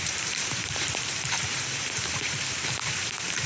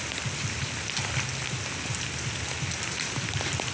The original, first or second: second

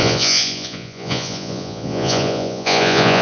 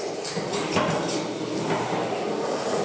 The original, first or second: second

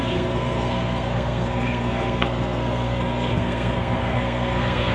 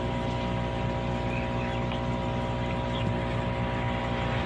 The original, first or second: second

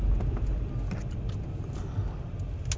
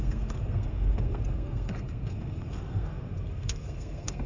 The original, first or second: first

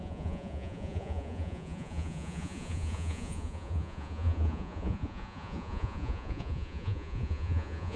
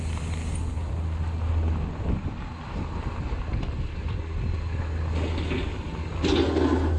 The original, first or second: second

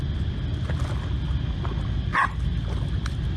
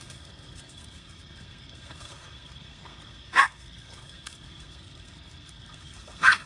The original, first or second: first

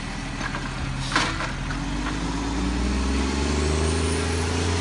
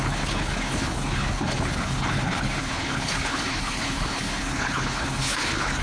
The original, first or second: first